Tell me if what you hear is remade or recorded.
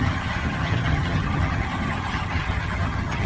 remade